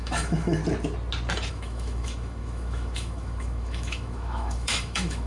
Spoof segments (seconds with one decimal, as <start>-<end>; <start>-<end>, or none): 0.0-0.6; 1.5-5.3